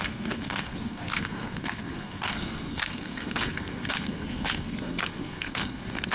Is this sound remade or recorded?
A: remade